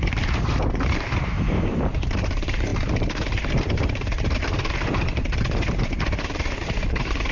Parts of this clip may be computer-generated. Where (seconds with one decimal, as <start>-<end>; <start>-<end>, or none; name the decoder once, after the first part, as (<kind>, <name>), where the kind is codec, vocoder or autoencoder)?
0.0-7.3 (vocoder, BigVGAN v2)